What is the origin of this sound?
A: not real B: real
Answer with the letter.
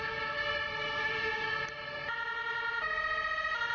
B